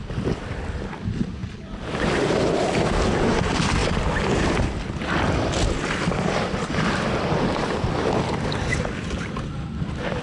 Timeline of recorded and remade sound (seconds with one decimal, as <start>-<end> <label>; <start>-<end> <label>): 0.0-10.2 recorded